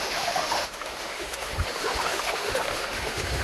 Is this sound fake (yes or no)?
yes